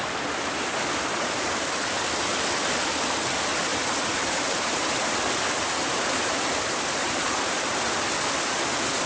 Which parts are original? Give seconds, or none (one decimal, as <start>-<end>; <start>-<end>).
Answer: 0.0-3.7; 5.3-5.8; 7.8-9.1